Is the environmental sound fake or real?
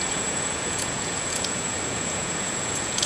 fake